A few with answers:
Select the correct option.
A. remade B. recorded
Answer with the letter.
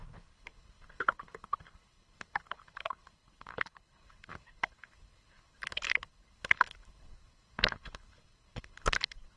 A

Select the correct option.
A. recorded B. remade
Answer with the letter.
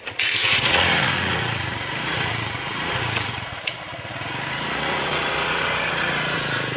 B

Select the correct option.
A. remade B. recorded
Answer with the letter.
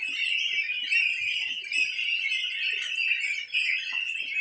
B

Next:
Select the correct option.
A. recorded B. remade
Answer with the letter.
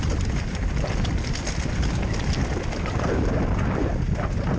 A